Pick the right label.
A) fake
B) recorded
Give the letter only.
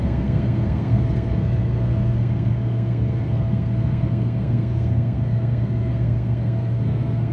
A